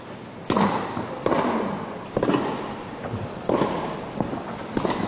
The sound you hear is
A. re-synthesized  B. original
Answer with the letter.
B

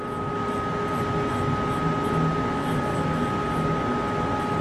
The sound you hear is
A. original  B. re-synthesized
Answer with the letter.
A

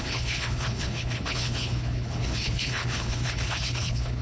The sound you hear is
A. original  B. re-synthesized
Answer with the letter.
B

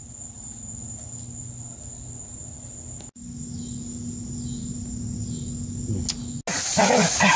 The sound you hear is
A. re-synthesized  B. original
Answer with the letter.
B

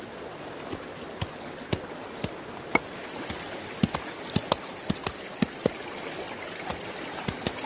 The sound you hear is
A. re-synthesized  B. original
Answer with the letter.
B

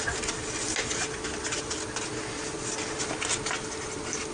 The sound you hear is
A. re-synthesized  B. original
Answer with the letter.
B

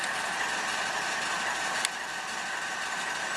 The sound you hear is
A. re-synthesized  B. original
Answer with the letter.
B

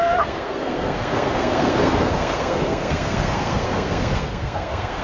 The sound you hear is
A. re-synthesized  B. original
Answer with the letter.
A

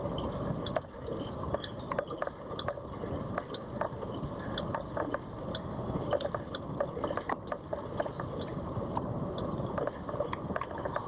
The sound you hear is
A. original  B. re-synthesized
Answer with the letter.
A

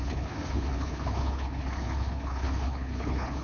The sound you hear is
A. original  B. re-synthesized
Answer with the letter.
B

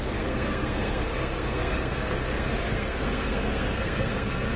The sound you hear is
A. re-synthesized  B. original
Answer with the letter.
A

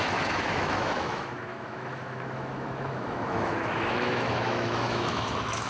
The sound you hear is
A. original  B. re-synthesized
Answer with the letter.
B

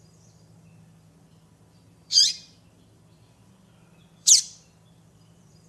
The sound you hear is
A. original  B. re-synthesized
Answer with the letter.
B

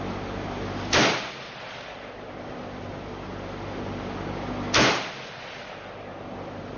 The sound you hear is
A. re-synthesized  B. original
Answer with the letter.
B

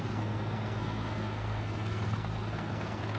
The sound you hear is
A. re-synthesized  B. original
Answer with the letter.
A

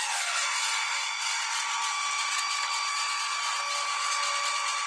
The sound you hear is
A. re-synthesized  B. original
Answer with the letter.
B